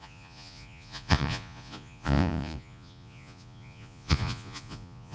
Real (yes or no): no